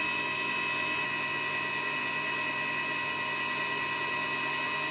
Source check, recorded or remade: recorded